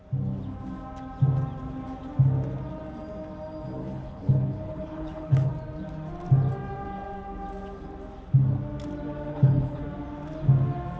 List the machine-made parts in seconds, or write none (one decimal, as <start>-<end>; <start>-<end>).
3.8-5.5; 9.3-9.8